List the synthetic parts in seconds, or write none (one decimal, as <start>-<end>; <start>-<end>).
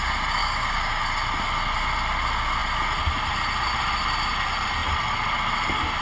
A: 0.4-1.0